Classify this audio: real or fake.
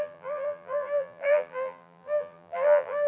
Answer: fake